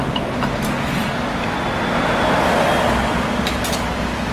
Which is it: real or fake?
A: real